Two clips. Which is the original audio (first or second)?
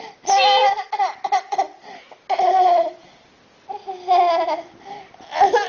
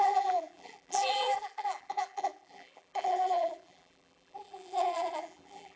first